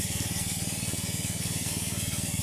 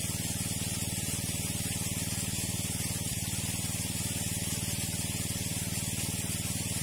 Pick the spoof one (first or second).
first